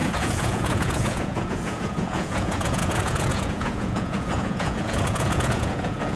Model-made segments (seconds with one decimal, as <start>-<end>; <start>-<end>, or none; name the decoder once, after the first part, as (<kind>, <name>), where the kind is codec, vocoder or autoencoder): 0.0-6.2 (vocoder, Vocos)